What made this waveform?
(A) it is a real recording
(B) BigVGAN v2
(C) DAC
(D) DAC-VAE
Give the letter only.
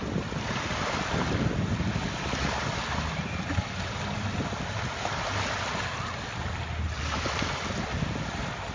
A